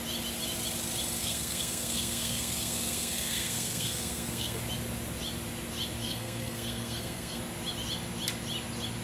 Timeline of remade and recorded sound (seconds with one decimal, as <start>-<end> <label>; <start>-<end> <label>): 0.0-1.2 recorded; 1.2-4.6 remade; 4.6-6.0 recorded; 6.0-7.4 remade; 7.4-9.0 recorded